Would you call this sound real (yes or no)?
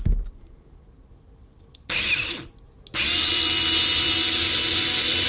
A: yes